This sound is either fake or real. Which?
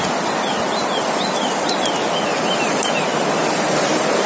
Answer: real